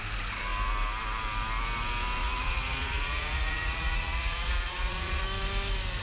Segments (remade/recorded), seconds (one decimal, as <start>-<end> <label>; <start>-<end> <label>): 0.0-2.2 recorded; 2.2-5.2 remade; 5.2-6.0 recorded